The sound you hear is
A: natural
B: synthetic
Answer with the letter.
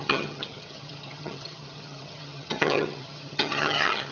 B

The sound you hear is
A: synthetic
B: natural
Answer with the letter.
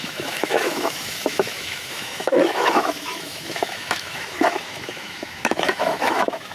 A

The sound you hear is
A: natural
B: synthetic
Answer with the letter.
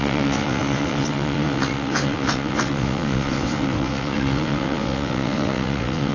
B